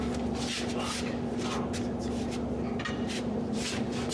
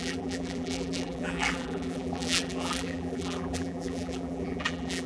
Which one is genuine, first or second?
first